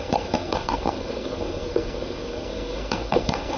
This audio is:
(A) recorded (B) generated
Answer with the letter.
B